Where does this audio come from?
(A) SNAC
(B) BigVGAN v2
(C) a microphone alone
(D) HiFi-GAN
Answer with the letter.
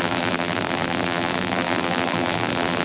B